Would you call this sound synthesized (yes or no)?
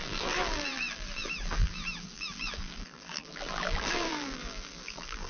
yes